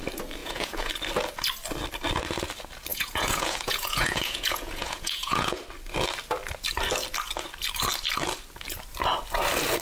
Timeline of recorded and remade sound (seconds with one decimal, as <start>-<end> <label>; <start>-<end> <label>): 0.0-0.4 recorded; 0.4-0.9 remade; 0.9-2.9 recorded; 2.9-5.6 remade; 5.6-9.8 recorded